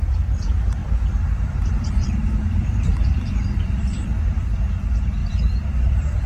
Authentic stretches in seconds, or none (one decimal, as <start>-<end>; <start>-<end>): 0.0-0.8; 4.6-5.2